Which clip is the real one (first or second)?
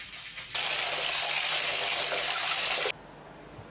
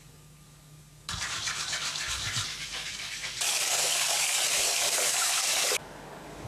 first